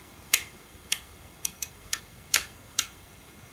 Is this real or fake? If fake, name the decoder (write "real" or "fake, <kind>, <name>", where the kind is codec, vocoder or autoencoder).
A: fake, codec, SNAC